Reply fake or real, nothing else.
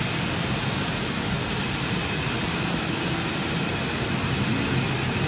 real